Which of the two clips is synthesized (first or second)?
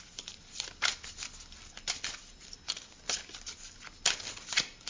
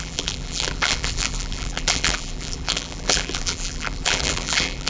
second